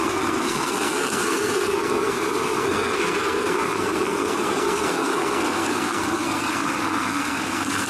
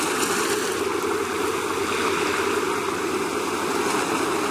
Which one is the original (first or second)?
second